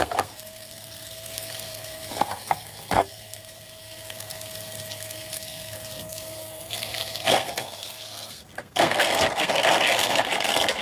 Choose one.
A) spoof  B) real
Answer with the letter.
A